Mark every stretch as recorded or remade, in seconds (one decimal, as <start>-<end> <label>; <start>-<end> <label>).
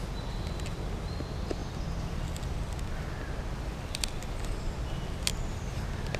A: 0.0-6.2 recorded